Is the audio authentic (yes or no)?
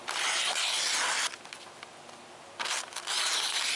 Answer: yes